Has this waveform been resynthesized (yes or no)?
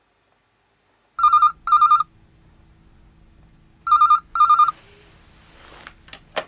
no